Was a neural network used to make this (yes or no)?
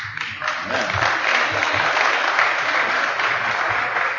no